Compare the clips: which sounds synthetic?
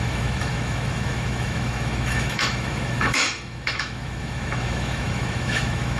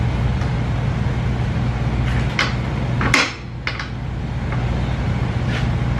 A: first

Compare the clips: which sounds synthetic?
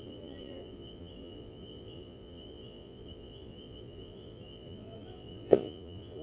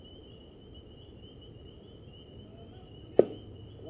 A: first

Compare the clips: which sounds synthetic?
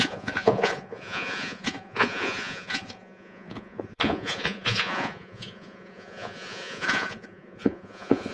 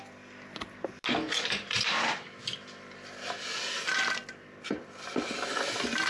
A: first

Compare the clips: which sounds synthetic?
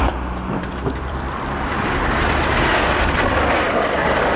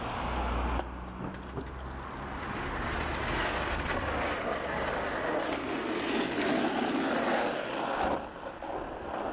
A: first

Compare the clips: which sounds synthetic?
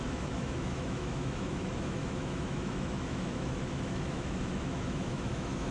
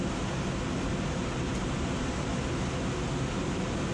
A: first